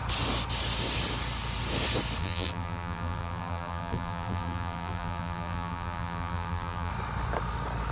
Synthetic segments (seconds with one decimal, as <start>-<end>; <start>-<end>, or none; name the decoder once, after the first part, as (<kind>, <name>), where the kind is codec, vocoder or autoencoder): 2.2-6.9 (vocoder, BigVGAN v2)